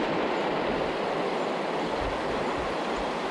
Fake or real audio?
real